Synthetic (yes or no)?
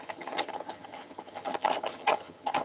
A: yes